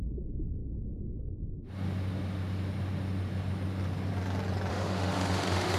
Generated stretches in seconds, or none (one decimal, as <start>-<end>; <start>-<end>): 4.7-5.8